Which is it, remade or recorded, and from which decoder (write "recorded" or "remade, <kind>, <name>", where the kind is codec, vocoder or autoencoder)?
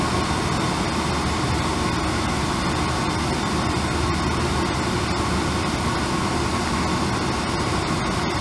recorded